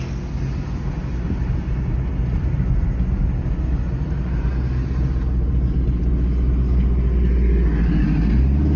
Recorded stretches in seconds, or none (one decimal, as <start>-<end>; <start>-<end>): 0.0-8.8